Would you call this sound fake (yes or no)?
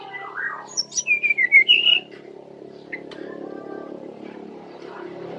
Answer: yes